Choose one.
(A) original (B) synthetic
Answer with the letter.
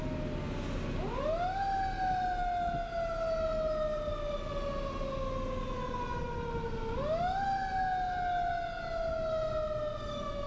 A